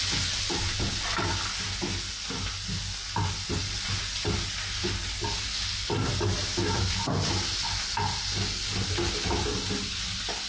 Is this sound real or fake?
real